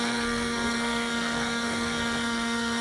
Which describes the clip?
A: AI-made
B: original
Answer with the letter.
A